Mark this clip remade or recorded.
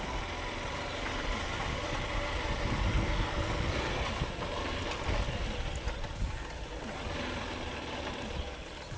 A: recorded